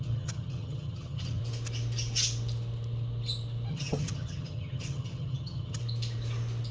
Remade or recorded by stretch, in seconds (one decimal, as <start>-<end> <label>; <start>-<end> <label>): 0.0-1.4 remade; 1.4-3.7 recorded; 3.7-5.8 remade; 5.8-6.7 recorded